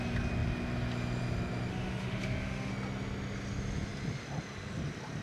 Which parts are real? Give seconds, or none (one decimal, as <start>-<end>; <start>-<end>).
0.0-1.7; 2.7-5.2